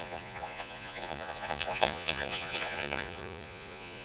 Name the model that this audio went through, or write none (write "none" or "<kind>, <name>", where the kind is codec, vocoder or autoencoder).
vocoder, Vocos